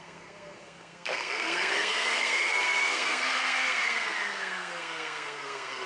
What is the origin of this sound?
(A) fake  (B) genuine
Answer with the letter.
A